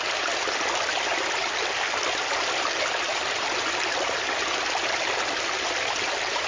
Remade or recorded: recorded